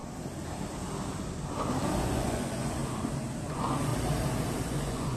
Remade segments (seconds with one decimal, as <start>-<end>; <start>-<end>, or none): 2.0-2.8; 3.5-3.9; 4.6-5.2